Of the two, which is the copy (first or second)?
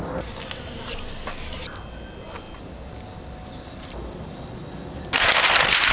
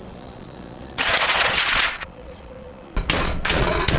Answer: second